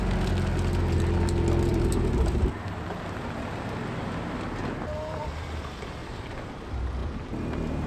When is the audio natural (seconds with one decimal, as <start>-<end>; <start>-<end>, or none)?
0.0-1.7; 2.8-6.0; 6.5-7.0